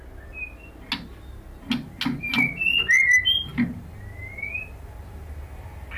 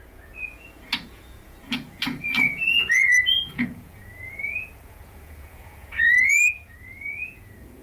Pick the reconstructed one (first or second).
second